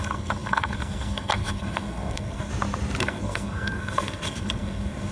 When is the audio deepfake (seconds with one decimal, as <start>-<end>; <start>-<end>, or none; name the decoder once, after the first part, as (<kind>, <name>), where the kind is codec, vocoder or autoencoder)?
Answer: 0.0-2.5 (codec, SNAC); 3.0-5.1